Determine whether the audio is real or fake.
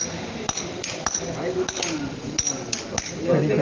real